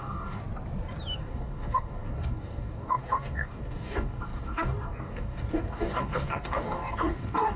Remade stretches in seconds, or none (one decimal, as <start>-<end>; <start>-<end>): 0.0-0.4; 1.2-7.6